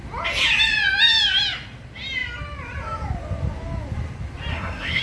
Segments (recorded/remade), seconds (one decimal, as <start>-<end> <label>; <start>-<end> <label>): 0.0-4.5 recorded; 4.5-5.0 remade